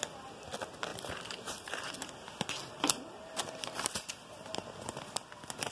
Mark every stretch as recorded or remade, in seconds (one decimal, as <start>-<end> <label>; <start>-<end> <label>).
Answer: 0.0-0.9 recorded; 0.9-1.9 remade; 1.9-2.6 recorded; 2.6-4.5 remade; 4.5-5.7 recorded